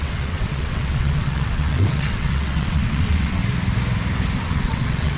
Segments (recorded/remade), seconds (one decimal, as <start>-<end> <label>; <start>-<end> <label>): 0.0-3.4 remade; 3.4-4.4 recorded; 4.4-5.2 remade